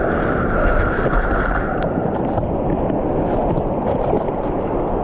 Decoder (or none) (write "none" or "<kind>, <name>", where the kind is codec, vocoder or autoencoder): none